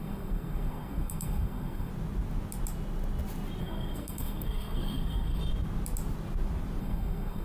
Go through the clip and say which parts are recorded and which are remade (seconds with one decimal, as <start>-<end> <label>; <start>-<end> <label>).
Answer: 0.0-1.9 remade; 1.9-3.6 recorded; 3.6-5.4 remade; 5.4-6.8 recorded; 6.8-7.4 remade